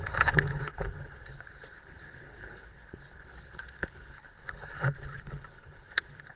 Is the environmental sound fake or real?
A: fake